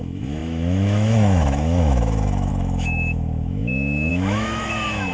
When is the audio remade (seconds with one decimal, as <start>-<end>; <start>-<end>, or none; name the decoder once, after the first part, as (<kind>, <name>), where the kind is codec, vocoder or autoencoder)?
0.0-5.1 (autoencoder, DAC-VAE)